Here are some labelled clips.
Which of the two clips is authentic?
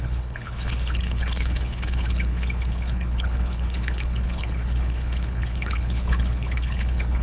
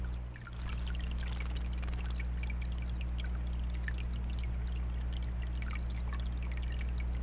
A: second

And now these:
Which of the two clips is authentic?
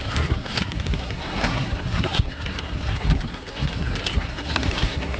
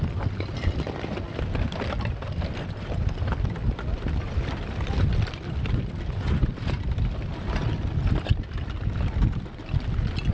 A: second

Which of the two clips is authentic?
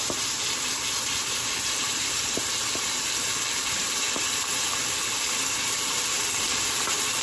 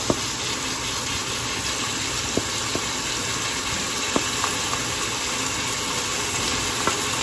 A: second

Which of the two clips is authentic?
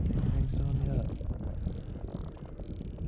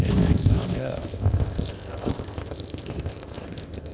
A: first